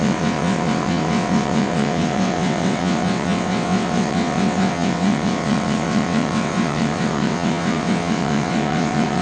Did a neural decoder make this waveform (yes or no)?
yes